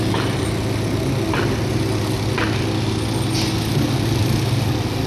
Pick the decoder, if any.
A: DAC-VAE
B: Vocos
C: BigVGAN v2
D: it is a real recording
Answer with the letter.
D